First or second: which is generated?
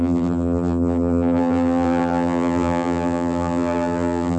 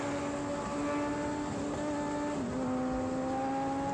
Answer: first